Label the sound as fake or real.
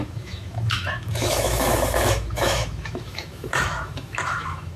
fake